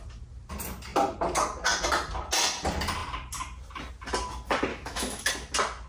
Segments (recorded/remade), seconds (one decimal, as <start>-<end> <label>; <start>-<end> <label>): 0.0-4.7 recorded; 4.7-5.3 remade; 5.3-5.9 recorded